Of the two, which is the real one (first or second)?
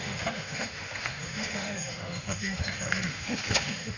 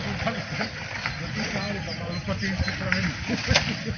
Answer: second